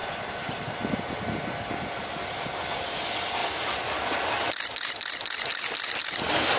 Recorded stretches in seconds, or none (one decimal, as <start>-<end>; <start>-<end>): 0.0-6.6